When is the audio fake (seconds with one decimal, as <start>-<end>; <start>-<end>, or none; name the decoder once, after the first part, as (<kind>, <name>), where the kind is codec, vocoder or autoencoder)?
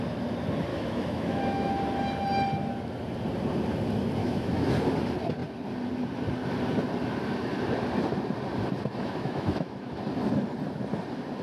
0.7-1.7 (autoencoder, DAC-VAE); 4.2-4.7; 9.0-9.9